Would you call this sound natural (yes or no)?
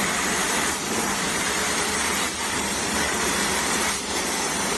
no